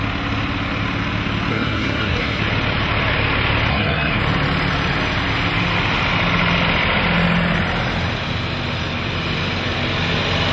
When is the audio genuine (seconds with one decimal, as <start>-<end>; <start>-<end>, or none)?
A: 0.0-1.5; 2.4-3.7; 4.2-10.5